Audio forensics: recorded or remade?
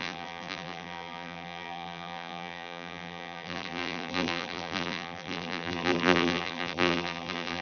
remade